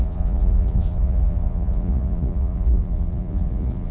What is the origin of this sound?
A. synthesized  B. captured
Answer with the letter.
A